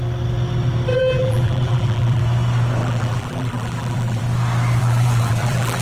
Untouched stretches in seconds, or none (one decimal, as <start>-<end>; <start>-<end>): 0.0-0.9; 2.2-2.8; 4.2-4.8